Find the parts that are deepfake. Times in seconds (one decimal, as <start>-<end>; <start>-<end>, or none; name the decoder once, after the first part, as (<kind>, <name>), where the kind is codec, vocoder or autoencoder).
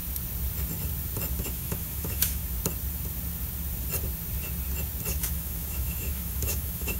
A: 1.4-2.4 (autoencoder, DAC-VAE); 5.2-7.0